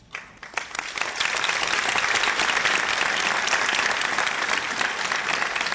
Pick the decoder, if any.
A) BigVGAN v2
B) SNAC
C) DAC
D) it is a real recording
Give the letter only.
D